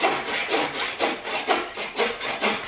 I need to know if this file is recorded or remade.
recorded